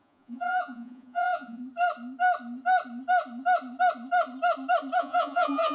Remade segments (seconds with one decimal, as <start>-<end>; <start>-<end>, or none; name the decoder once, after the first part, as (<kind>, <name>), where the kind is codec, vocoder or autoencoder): 0.0-1.6 (vocoder, Vocos); 5.0-5.7